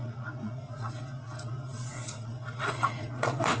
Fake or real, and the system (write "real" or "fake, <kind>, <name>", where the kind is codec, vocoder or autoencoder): fake, vocoder, Vocos